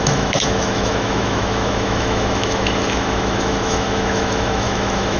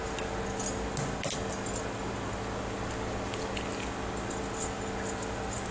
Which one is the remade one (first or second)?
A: first